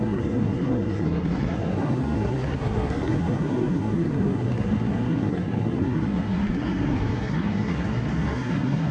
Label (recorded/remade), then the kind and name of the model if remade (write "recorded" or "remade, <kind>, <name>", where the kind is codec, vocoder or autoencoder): remade, codec, SNAC